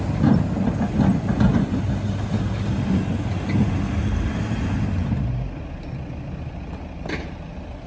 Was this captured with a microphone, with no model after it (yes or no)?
yes